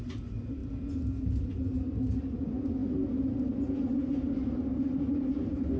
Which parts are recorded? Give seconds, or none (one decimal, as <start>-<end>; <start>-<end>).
0.0-5.8